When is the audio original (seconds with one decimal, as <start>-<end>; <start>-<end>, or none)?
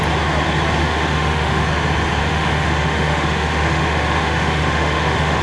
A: 0.0-0.8; 1.7-2.2